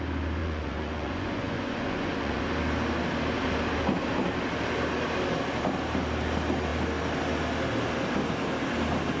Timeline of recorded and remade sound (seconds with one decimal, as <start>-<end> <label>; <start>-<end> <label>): 0.0-0.4 recorded; 0.4-2.4 remade; 2.4-9.2 recorded